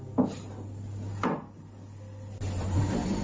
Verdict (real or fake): real